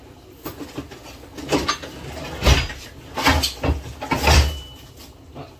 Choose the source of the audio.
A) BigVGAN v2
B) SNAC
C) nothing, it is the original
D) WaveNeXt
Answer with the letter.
C